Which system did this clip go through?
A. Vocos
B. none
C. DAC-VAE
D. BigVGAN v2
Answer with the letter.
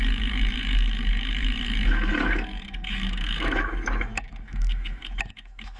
C